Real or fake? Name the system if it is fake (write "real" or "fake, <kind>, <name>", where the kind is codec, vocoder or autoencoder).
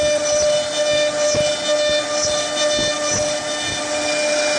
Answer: real